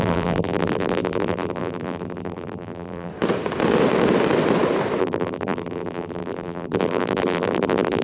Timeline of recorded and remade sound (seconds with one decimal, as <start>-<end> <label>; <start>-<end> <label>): 0.0-3.1 remade; 3.1-5.0 recorded; 5.0-8.0 remade